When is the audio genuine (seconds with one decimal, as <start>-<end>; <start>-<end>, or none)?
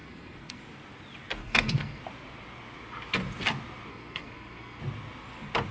0.6-1.4; 2.0-3.9; 4.8-5.7